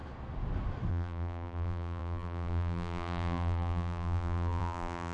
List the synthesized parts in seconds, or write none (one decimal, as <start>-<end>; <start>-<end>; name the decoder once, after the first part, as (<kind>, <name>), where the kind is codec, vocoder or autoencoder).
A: 0.9-5.1 (vocoder, BigVGAN v2)